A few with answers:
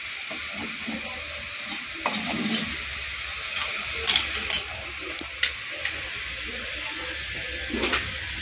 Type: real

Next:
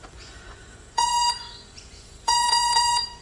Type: fake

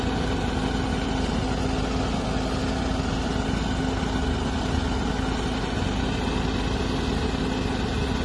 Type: real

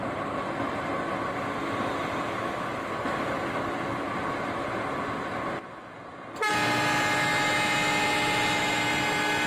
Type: real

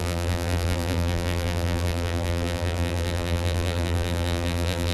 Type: fake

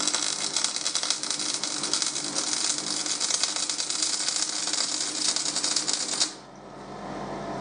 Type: real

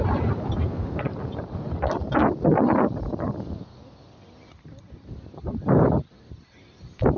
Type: real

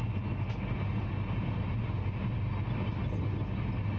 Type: real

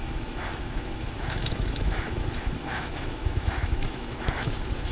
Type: fake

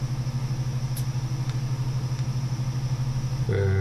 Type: real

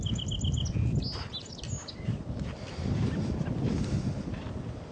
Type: real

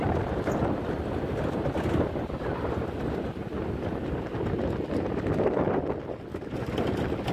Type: real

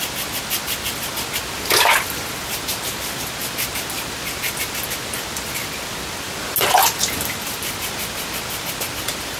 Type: real